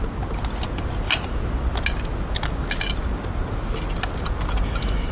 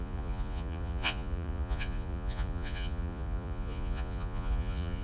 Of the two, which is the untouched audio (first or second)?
first